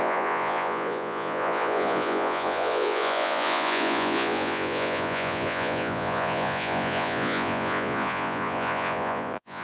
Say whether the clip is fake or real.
fake